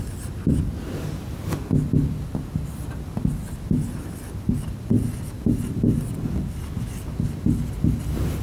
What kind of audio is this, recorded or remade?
recorded